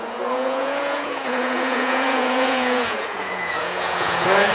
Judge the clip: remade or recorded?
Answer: remade